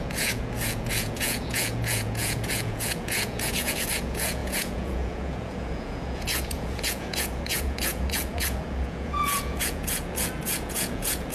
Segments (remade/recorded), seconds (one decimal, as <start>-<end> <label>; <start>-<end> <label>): 0.0-11.3 remade